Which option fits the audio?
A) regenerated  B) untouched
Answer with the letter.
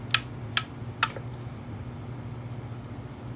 B